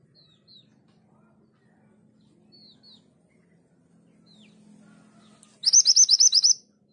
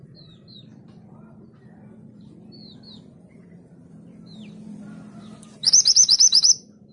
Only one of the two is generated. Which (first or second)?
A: second